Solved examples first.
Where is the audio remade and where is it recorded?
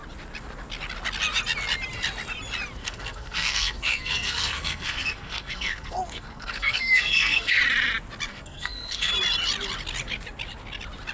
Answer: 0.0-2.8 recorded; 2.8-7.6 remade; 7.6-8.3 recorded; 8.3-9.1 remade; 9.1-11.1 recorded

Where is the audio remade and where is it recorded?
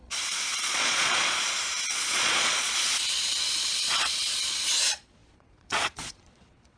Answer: 0.0-6.8 remade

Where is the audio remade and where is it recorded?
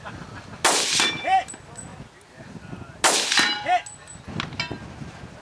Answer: 0.0-5.4 recorded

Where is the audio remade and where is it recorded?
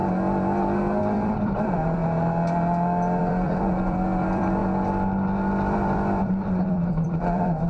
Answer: 0.0-1.0 recorded; 1.0-2.0 remade; 2.0-3.2 recorded; 3.2-4.6 remade; 4.6-5.5 recorded; 5.5-7.7 remade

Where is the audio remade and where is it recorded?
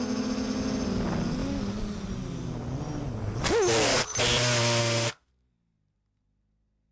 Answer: 0.0-4.8 recorded; 4.8-5.3 remade; 5.3-6.9 recorded